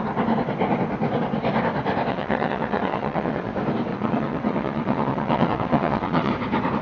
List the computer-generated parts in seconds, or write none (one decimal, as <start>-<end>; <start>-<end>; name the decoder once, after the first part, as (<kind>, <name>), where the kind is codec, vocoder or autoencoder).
2.1-3.5 (vocoder, WaveNeXt); 3.9-6.3